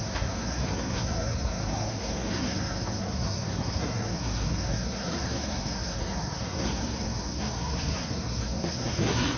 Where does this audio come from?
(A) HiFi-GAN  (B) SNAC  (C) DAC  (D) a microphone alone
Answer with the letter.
B